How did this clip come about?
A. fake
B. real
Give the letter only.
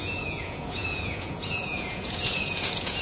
A